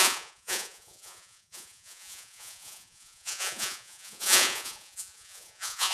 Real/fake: fake